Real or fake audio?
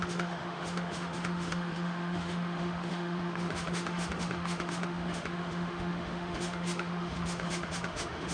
fake